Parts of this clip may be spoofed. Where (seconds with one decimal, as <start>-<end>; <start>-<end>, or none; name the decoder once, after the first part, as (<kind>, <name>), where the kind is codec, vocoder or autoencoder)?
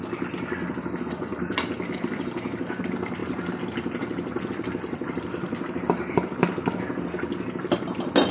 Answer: none